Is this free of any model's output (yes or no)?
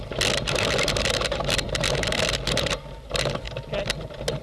yes